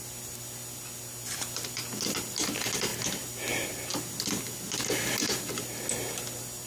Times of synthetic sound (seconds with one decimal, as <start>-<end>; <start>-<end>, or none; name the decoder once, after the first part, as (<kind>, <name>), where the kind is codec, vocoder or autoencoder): none